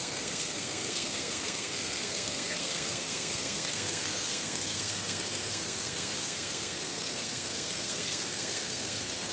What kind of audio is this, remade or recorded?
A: remade